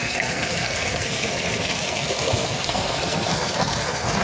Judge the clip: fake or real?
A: fake